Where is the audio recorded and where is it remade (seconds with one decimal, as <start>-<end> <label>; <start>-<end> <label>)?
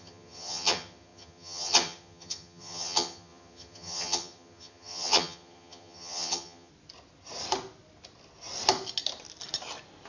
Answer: 0.0-6.7 remade; 6.7-10.1 recorded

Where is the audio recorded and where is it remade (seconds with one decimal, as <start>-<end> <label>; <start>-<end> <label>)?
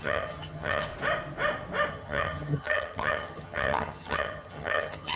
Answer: 0.0-0.9 remade; 0.9-1.9 recorded; 1.9-5.2 remade